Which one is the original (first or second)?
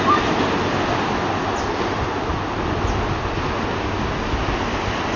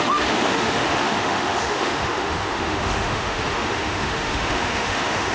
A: first